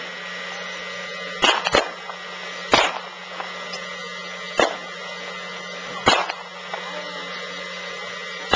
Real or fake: real